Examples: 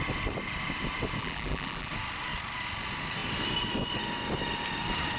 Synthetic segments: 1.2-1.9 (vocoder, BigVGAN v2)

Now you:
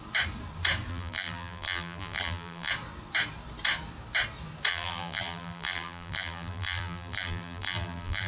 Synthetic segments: 0.9-2.7 (vocoder, BigVGAN v2); 4.7-8.3

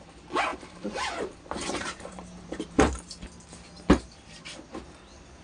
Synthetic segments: 0.5-3.1 (vocoder, BigVGAN v2)